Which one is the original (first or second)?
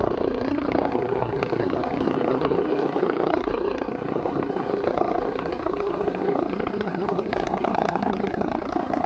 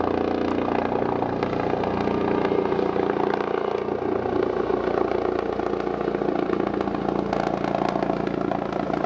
second